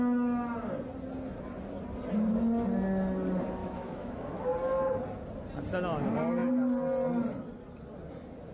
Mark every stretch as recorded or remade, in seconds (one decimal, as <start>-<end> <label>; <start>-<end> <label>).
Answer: 0.0-3.6 recorded; 3.6-4.4 remade; 4.4-8.5 recorded